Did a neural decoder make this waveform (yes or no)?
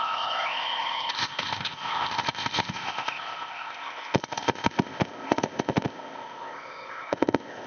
yes